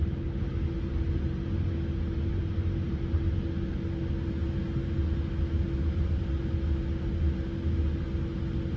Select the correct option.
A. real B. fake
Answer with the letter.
A